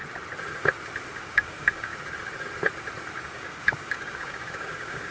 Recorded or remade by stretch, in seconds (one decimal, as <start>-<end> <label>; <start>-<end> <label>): 0.0-1.2 recorded; 1.2-1.9 remade; 1.9-3.2 recorded; 3.2-5.1 remade